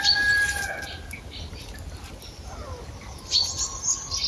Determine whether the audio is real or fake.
real